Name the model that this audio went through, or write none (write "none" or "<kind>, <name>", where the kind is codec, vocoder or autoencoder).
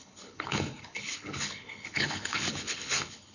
codec, HILCodec